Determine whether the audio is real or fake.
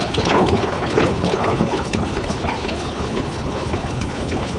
fake